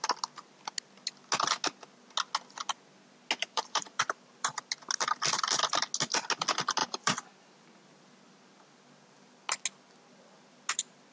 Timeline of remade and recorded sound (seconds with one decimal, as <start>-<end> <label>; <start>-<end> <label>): 0.0-3.4 recorded; 3.4-4.6 remade; 4.6-6.8 recorded; 6.8-7.7 remade; 7.7-11.1 recorded